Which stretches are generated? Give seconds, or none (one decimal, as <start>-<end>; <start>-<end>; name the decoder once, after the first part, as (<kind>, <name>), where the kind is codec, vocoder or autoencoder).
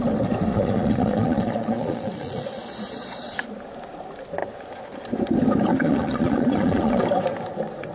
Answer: 0.5-3.3 (vocoder, Vocos); 5.7-7.0